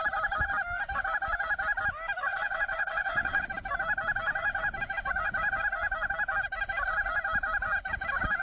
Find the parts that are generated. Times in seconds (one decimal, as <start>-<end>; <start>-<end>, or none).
2.3-3.5